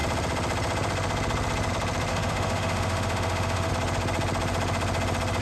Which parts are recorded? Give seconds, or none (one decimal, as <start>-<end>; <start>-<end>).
0.0-2.1; 3.7-5.4